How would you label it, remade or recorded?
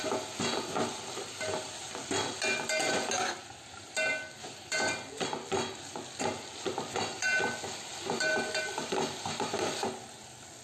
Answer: recorded